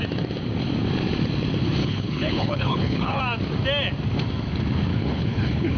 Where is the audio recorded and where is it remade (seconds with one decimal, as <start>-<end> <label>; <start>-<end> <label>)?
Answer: 0.0-1.8 recorded; 1.8-3.2 remade; 3.2-4.9 recorded; 4.9-5.8 remade